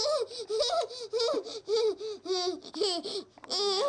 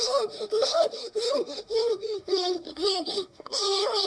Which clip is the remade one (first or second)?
second